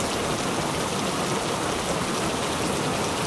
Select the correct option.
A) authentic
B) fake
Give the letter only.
A